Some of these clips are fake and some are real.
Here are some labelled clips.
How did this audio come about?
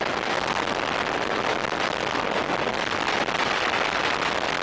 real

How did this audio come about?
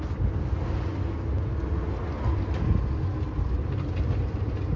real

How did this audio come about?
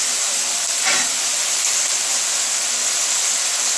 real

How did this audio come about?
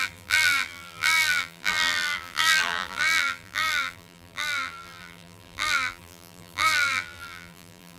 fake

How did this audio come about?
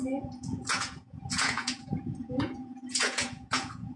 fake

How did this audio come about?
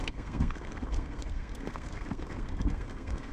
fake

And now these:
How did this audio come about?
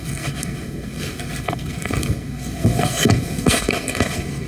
fake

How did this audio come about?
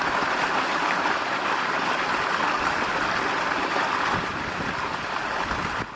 real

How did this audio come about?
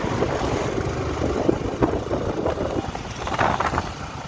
real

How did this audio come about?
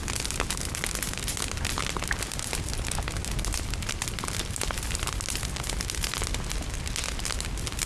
real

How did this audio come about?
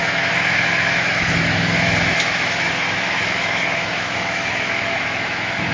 fake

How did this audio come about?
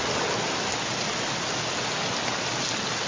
real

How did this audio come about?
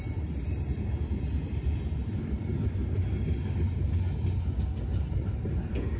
real